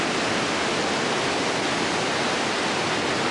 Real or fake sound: real